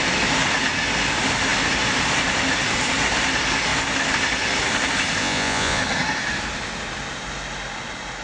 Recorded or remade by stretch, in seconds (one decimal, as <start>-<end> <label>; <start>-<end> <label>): 0.0-5.2 recorded; 5.2-5.8 remade; 5.8-8.2 recorded